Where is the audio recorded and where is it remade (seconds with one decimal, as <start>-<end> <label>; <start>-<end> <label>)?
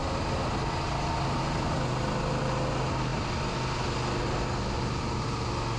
0.0-5.8 recorded